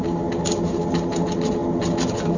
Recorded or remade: recorded